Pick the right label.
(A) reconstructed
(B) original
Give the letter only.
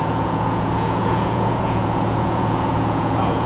A